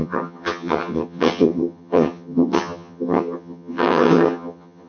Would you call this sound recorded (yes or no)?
no